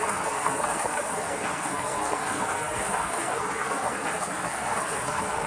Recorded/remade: remade